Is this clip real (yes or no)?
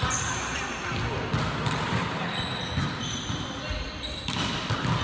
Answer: yes